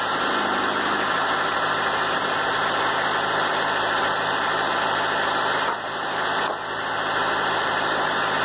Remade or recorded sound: recorded